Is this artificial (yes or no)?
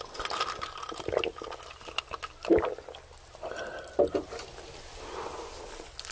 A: no